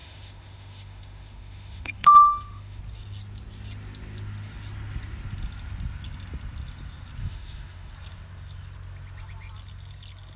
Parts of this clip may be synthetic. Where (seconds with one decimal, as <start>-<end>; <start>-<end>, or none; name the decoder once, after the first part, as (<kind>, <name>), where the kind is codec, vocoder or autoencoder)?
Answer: 0.0-2.8 (autoencoder, DAC-VAE); 7.2-7.9

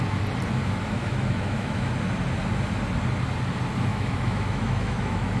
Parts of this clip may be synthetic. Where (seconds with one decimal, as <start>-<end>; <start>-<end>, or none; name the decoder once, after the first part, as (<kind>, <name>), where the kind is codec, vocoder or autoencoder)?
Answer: 0.6-1.9 (autoencoder, DAC-VAE); 3.9-5.4

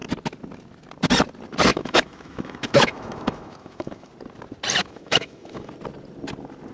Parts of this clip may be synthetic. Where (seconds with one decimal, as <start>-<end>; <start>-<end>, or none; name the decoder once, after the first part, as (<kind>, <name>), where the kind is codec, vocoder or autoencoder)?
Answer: 1.7-4.1 (autoencoder, DAC-VAE); 4.8-5.7